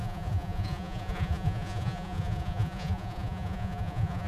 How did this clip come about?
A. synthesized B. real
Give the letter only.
A